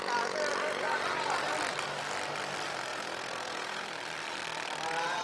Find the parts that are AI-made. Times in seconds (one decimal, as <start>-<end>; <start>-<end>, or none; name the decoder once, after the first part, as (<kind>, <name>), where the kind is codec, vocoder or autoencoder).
2.9-3.8 (vocoder, Vocos)